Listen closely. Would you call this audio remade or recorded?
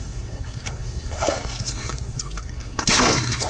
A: remade